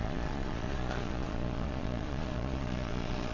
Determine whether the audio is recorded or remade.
remade